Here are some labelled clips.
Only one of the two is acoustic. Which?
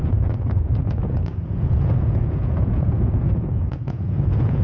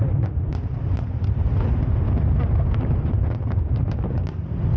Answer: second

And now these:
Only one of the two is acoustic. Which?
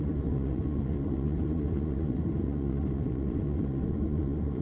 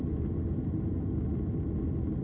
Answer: second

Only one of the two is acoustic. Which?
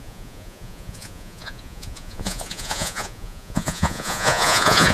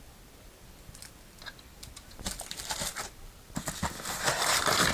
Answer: second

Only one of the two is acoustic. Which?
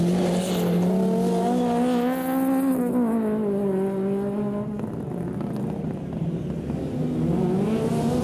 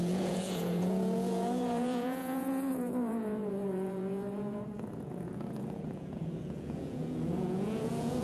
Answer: first